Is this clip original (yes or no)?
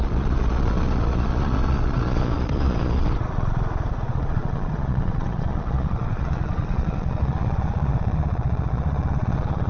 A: no